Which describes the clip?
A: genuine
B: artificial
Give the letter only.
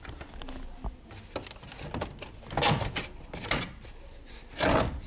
A